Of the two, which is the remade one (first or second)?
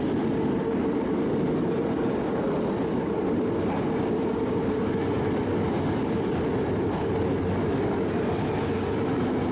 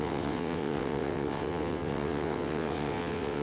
second